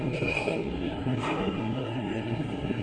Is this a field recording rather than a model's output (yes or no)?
no